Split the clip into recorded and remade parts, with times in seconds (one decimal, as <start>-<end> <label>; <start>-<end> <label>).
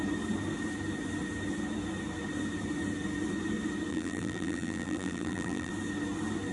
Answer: 0.0-3.9 recorded; 3.9-5.7 remade; 5.7-6.5 recorded